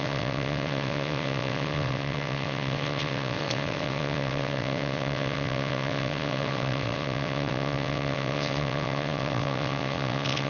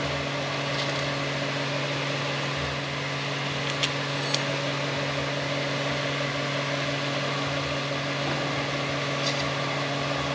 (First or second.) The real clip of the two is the second